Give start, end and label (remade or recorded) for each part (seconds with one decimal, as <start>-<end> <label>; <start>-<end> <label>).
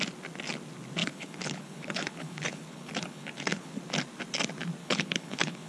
0.0-1.0 recorded; 1.0-3.8 remade; 3.8-4.8 recorded; 4.8-5.7 remade